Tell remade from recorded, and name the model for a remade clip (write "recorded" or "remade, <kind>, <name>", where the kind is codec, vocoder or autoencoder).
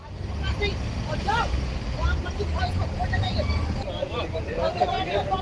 recorded